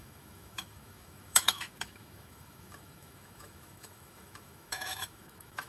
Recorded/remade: remade